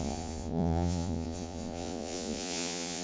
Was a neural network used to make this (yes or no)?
yes